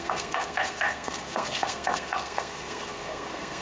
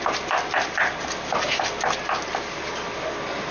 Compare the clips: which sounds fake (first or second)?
first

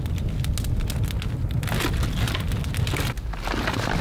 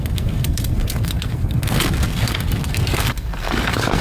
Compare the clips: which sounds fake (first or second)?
second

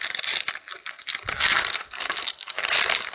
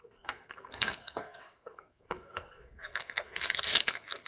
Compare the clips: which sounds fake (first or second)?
second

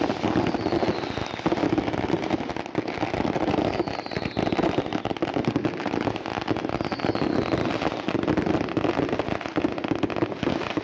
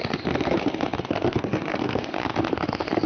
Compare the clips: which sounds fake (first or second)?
second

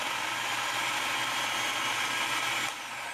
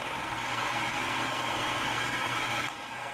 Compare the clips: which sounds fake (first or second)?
second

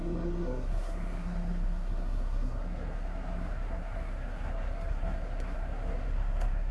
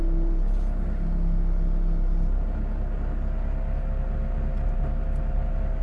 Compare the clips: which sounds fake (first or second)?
first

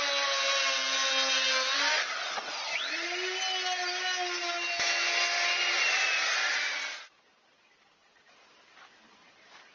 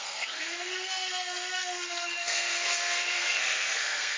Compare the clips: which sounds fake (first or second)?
second